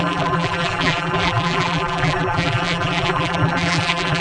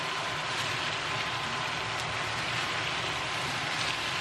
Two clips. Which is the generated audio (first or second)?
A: first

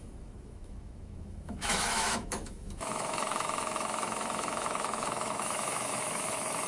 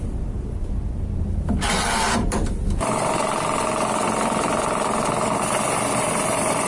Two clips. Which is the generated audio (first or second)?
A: first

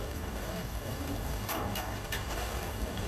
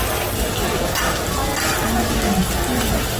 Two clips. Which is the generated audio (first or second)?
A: first